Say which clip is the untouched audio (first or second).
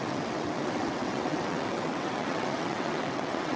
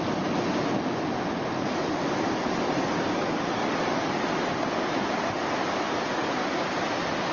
second